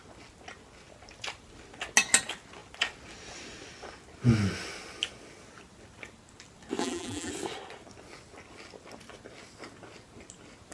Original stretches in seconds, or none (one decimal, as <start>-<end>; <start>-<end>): 0.0-6.8; 7.3-10.7